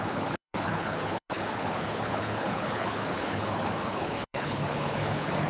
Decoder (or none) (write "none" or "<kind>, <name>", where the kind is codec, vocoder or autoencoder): codec, HILCodec